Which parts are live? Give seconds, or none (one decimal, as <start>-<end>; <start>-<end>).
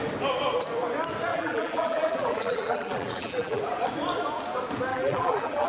0.0-1.3; 3.6-4.9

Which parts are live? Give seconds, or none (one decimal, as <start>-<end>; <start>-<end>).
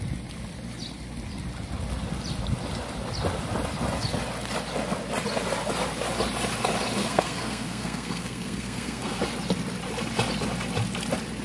0.0-7.0; 9.2-11.4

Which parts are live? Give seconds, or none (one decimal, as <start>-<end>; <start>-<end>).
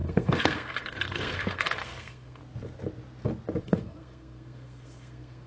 2.4-3.6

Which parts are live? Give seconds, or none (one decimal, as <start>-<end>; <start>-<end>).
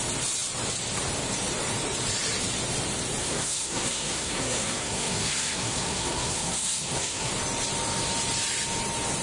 0.0-3.2; 7.3-9.2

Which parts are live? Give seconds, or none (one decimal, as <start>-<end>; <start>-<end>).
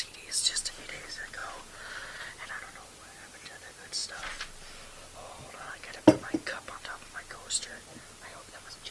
0.0-8.9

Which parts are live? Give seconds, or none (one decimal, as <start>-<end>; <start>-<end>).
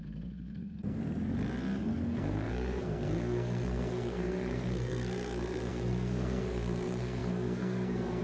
1.0-2.0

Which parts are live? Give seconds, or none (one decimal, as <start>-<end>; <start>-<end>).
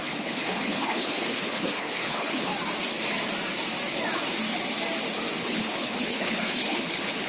2.5-5.4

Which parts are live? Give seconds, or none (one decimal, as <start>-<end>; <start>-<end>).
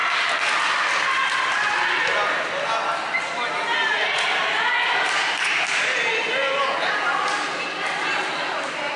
0.0-9.0